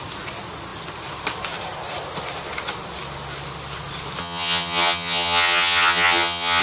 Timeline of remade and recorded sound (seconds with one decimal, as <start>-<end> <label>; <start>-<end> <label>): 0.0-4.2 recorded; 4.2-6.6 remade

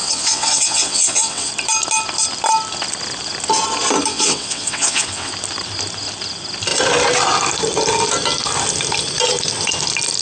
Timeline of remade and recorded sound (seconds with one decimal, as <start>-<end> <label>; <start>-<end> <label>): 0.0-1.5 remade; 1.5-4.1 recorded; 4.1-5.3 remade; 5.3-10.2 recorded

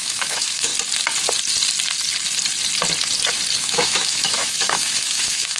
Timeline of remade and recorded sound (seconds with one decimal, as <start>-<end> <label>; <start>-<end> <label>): 0.0-0.7 remade; 0.7-3.6 recorded; 3.6-5.6 remade

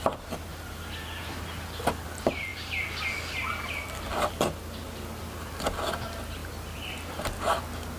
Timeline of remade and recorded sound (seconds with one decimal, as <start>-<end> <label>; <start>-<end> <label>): 0.0-8.0 recorded

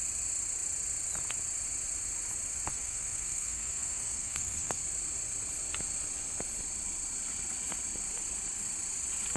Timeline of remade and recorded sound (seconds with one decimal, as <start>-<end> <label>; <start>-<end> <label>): 0.0-2.7 recorded; 2.7-4.8 remade; 4.8-9.4 recorded

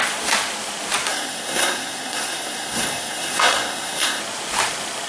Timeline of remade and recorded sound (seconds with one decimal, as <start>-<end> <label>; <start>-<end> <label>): 0.0-1.1 recorded; 1.1-4.2 remade; 4.2-5.1 recorded

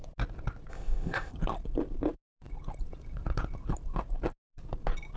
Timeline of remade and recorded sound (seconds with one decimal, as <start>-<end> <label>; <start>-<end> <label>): 0.0-0.7 recorded; 0.7-1.3 remade; 1.3-5.2 recorded

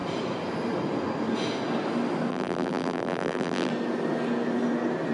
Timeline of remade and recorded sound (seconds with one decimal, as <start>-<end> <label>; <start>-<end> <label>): 0.0-2.3 recorded; 2.3-3.7 remade; 3.7-5.1 recorded